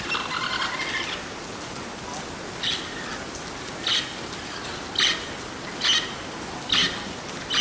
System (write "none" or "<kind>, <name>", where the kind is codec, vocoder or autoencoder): none